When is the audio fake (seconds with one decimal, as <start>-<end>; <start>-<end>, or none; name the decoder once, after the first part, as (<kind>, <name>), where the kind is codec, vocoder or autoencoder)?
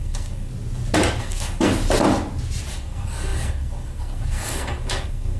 0.0-0.5 (codec, SNAC); 1.2-1.7; 2.7-5.4